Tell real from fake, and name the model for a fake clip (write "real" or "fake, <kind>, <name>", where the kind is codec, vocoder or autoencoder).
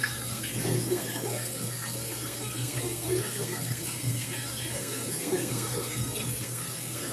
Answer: fake, codec, SNAC